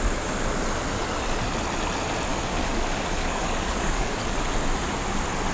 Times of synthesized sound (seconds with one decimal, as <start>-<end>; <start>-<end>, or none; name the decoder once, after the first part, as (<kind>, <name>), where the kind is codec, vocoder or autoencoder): 2.3-4.2 (codec, DAC)